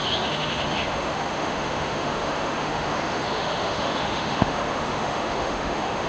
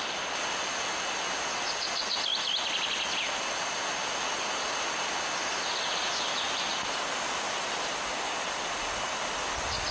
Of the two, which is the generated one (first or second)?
first